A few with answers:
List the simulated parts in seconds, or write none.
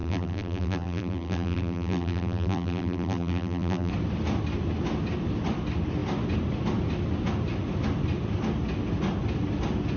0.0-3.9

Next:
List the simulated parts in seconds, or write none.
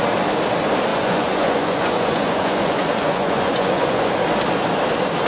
0.9-4.1